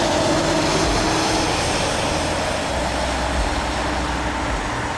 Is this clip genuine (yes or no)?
yes